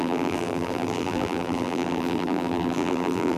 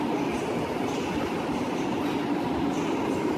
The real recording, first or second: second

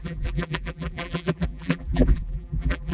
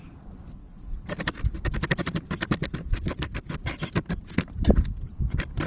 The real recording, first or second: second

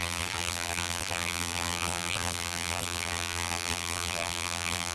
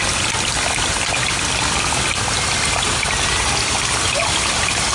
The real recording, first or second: second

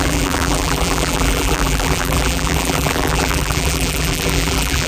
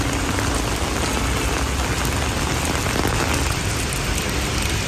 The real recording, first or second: second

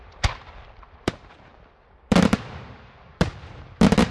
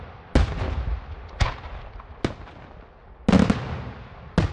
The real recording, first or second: second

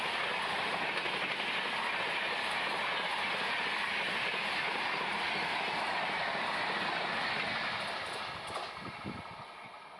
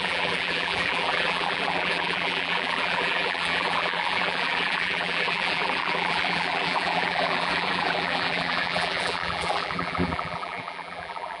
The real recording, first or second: first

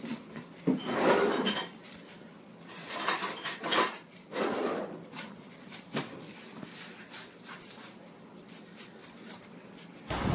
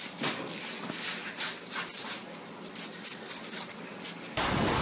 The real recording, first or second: second